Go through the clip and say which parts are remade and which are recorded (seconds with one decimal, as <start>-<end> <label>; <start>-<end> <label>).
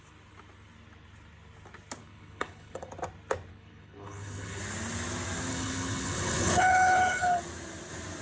0.0-2.0 recorded; 2.0-2.9 remade; 2.9-3.5 recorded; 3.5-4.6 remade; 4.6-5.5 recorded; 5.5-7.4 remade; 7.4-8.2 recorded